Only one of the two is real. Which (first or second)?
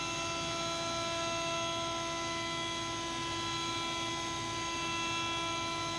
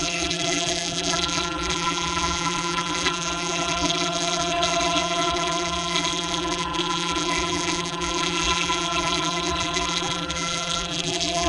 first